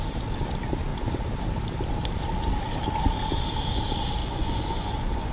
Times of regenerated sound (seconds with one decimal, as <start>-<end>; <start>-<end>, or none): 4.2-5.3